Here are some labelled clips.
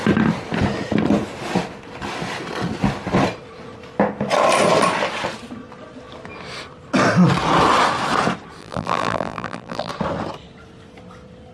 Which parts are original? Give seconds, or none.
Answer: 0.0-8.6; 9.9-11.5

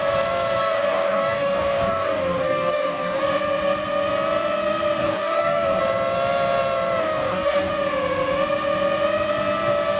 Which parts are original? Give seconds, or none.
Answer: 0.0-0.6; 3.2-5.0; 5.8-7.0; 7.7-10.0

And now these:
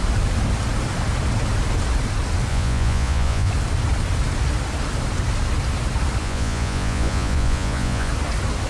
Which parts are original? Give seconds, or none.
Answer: 0.0-2.5; 3.5-6.2; 8.1-8.7

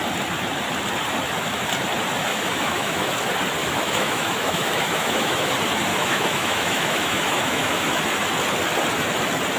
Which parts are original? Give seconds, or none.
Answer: 0.0-2.3; 3.1-3.6; 5.5-5.9; 8.0-9.6

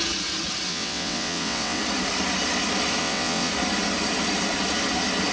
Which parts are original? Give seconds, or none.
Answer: 0.0-0.7; 1.8-3.0; 3.5-5.3

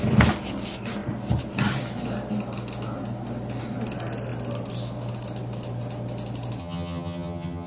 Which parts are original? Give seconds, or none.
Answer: 0.0-6.6

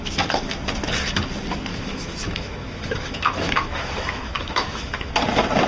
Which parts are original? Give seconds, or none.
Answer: 0.0-1.7; 5.1-5.7

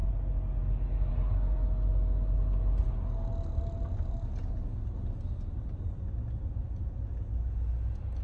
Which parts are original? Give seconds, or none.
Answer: 0.0-8.2